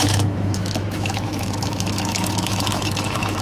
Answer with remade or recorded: remade